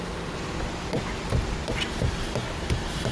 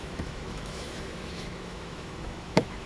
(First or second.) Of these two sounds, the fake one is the second